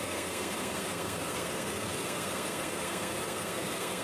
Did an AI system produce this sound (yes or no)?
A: yes